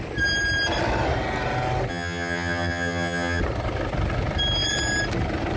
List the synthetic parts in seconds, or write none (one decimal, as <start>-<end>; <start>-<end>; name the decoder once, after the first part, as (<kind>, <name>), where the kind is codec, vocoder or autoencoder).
1.9-3.4 (vocoder, HiFi-GAN)